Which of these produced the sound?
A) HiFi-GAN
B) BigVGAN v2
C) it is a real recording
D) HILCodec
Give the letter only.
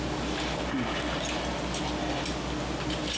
C